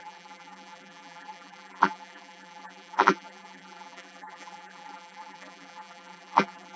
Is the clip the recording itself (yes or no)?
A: no